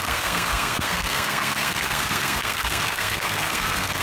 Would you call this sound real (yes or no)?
no